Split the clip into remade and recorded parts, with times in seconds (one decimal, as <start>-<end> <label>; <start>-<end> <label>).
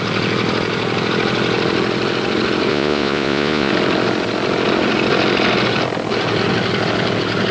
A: 0.0-2.7 recorded; 2.7-3.7 remade; 3.7-7.5 recorded